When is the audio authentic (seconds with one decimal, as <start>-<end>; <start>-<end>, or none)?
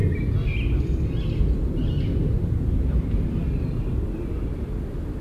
0.0-5.2